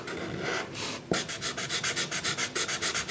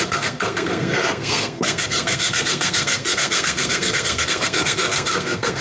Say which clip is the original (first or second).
first